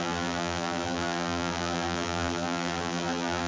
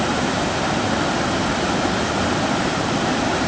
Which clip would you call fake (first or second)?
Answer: first